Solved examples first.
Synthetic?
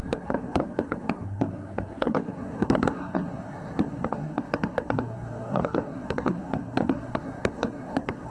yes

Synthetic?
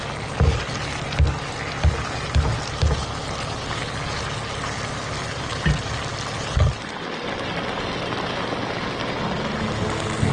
no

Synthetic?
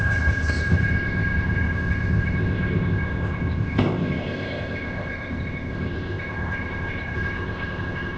yes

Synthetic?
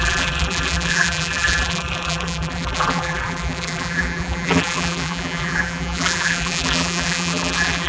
yes